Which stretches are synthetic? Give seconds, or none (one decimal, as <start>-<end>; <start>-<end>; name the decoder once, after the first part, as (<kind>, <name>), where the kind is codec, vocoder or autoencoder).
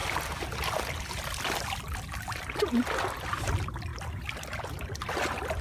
none